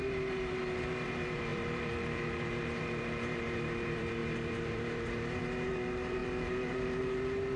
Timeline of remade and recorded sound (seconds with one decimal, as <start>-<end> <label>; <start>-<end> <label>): 0.0-7.6 remade